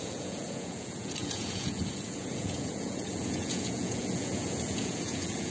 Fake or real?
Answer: fake